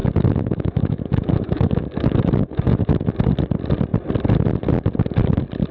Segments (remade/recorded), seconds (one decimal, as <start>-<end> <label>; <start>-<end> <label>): 0.0-3.1 remade; 3.1-5.7 recorded